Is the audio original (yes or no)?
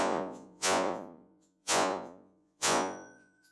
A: no